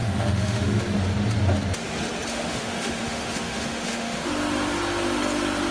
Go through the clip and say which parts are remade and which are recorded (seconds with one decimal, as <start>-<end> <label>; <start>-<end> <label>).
0.0-0.8 remade; 0.8-2.3 recorded; 2.3-4.3 remade; 4.3-5.7 recorded